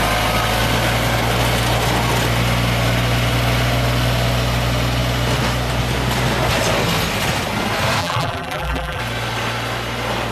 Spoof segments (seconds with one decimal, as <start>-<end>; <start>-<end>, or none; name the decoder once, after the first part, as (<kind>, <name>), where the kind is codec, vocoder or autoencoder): 8.0-9.0 (vocoder, BigVGAN v2)